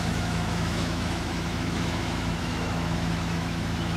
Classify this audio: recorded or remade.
remade